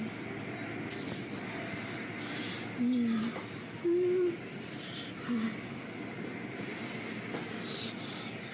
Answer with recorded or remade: recorded